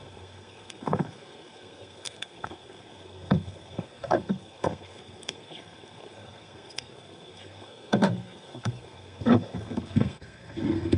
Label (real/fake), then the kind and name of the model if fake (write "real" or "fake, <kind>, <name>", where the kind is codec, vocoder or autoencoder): fake, codec, SNAC